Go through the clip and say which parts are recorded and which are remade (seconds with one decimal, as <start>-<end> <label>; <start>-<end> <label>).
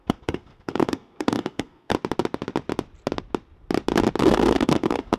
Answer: 0.0-1.9 remade; 1.9-4.2 recorded; 4.2-5.2 remade